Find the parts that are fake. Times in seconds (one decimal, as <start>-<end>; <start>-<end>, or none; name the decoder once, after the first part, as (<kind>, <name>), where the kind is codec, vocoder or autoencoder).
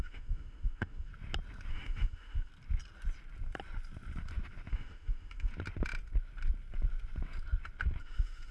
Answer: 0.0-1.1 (autoencoder, DAC-VAE); 1.7-2.5; 4.7-5.5; 8.0-8.5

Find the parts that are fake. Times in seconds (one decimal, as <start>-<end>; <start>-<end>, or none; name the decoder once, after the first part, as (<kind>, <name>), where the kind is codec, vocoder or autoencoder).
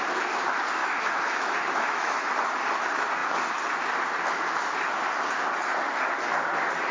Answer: 0.8-2.2 (autoencoder, DAC-VAE)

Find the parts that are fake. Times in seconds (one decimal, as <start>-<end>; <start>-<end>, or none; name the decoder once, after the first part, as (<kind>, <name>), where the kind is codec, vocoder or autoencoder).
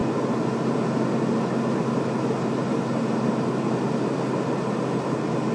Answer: none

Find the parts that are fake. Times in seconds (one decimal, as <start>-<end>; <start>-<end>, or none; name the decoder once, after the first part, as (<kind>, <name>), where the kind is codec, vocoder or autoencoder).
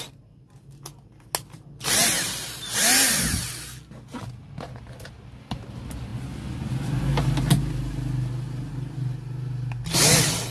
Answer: none